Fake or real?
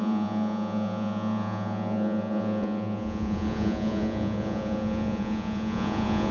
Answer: fake